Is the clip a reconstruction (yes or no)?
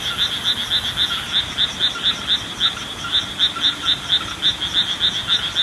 no